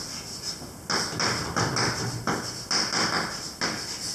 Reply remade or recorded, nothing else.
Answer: recorded